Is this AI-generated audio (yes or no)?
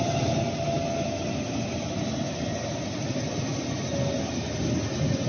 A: no